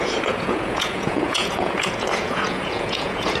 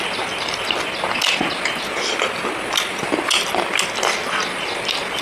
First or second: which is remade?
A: first